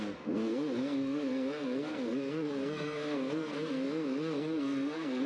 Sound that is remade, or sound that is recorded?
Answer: remade